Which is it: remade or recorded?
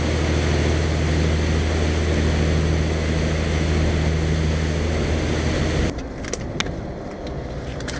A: recorded